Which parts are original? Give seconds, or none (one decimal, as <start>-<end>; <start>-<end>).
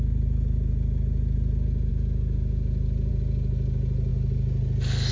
0.0-5.1